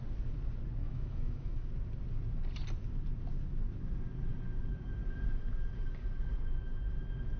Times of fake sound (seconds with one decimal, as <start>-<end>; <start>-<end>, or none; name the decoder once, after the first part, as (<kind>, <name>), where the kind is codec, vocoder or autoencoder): 0.8-1.7 (autoencoder, DAC-VAE)